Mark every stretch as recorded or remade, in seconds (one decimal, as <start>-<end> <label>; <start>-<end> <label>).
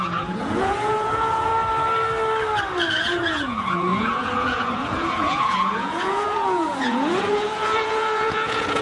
0.0-1.5 remade; 1.5-2.9 recorded; 2.9-8.8 remade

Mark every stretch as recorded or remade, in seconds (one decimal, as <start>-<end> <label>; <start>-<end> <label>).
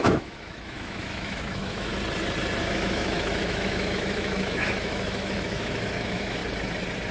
0.0-1.9 remade; 1.9-2.6 recorded; 2.6-6.4 remade; 6.4-7.1 recorded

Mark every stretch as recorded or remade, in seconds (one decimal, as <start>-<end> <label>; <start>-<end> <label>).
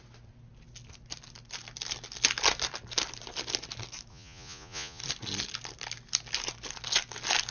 0.0-4.1 recorded; 4.1-5.0 remade; 5.0-7.5 recorded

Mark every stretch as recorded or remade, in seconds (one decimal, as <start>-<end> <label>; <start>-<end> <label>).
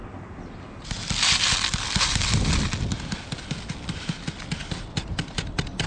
0.0-5.9 recorded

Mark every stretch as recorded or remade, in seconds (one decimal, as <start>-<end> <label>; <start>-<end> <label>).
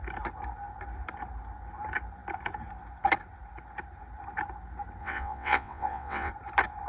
0.0-5.0 recorded; 5.0-6.3 remade; 6.3-6.9 recorded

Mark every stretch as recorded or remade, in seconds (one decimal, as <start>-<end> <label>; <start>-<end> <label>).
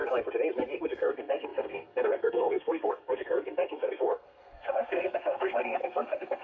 0.0-0.8 recorded; 0.8-6.4 remade